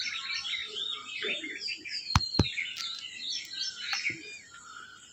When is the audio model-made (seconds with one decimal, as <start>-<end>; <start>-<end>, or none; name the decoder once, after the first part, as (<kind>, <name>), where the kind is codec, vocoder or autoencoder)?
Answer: none